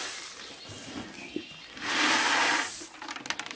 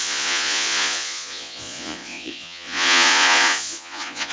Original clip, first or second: first